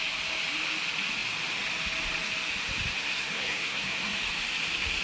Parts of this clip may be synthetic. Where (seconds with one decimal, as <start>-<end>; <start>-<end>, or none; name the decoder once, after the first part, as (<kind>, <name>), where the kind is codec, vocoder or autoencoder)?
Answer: 3.0-4.2 (codec, SNAC)